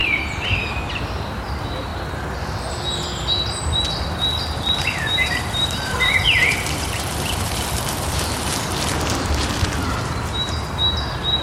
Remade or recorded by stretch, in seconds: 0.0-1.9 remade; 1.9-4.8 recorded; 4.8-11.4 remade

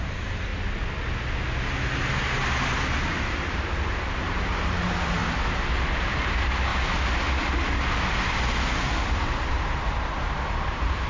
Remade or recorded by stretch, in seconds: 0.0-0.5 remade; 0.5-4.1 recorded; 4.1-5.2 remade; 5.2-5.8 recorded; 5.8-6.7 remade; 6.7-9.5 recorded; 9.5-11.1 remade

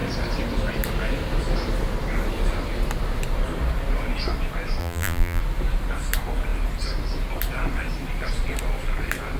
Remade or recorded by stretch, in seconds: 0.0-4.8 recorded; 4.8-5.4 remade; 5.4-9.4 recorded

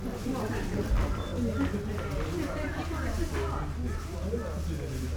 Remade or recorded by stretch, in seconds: 0.0-5.2 recorded